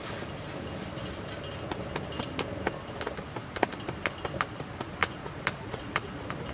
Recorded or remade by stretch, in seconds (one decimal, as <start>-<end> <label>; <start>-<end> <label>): 0.0-5.0 recorded; 5.0-6.1 remade; 6.1-6.5 recorded